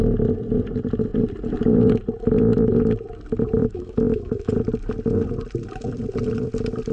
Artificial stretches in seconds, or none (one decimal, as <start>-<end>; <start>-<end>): 3.6-4.5